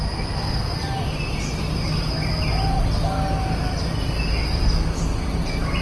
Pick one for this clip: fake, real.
real